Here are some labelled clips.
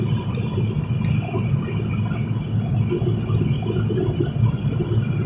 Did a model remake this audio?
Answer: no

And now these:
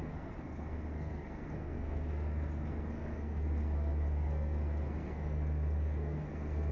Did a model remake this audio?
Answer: yes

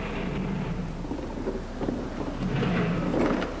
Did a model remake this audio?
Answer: no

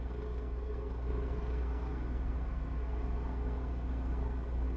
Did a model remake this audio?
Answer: yes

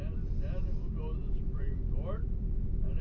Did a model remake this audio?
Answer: no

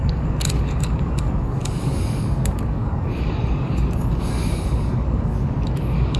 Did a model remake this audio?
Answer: yes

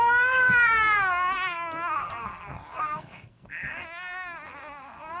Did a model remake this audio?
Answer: yes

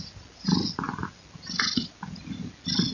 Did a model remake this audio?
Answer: no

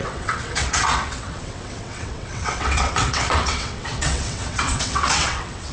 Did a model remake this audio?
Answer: yes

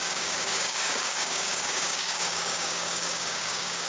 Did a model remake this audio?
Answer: yes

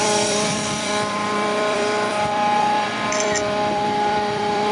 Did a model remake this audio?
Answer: yes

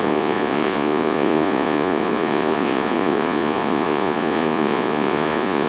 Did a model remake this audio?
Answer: yes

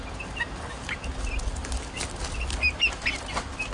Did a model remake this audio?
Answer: no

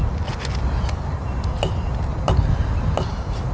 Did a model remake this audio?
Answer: no